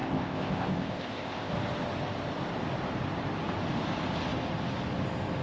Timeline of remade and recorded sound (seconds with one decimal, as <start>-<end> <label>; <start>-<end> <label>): 0.0-1.5 remade; 1.5-5.4 recorded

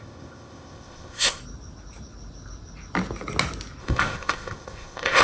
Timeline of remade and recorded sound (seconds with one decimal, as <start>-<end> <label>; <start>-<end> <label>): 0.0-1.4 remade; 1.4-3.8 recorded; 3.8-5.2 remade

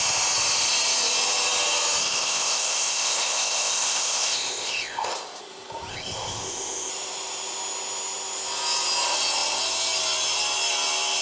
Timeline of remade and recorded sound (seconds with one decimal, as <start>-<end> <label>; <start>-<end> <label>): 0.0-2.0 recorded; 2.0-5.1 remade; 5.1-5.9 recorded; 5.9-6.9 remade; 6.9-11.2 recorded

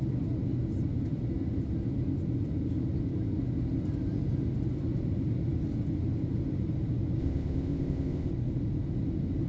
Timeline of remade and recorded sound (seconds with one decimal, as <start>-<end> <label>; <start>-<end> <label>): 0.0-7.2 recorded; 7.2-8.3 remade; 8.3-9.5 recorded

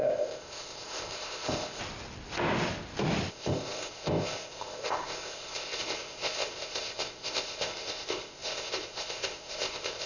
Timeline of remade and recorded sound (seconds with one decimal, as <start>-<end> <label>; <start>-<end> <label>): 0.0-1.8 remade; 1.8-3.3 recorded; 3.3-10.1 remade

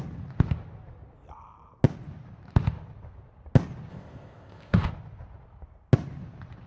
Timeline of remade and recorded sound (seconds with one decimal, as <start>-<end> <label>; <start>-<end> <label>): 0.0-3.9 recorded; 3.9-4.9 remade; 4.9-6.7 recorded

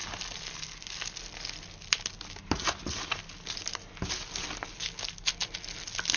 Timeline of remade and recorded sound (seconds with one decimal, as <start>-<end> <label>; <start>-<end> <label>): 0.0-6.2 recorded

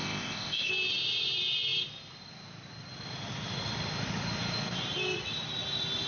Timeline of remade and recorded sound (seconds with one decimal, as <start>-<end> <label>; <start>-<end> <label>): 0.0-0.7 remade; 0.7-6.1 recorded